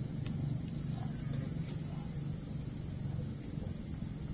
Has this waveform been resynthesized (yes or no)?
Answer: no